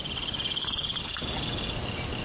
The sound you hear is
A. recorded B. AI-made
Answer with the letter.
A